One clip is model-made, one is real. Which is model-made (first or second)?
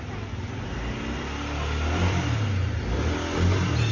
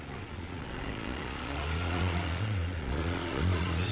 second